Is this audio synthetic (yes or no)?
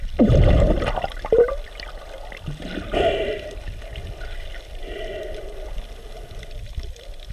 no